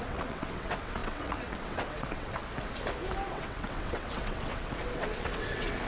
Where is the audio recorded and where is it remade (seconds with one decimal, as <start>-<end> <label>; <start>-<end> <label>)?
0.0-2.4 remade; 2.4-3.3 recorded; 3.3-5.9 remade